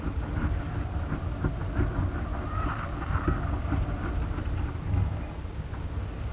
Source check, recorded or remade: recorded